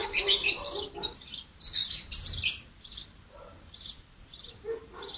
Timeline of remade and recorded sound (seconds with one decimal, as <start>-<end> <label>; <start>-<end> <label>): 0.0-1.8 remade; 1.8-2.7 recorded; 2.7-5.2 remade